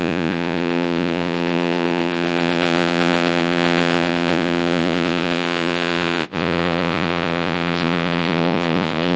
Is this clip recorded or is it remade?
remade